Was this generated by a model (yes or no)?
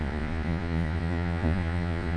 yes